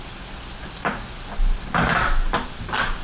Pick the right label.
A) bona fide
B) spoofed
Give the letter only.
A